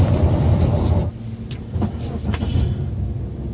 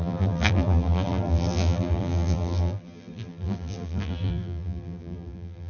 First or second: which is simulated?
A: second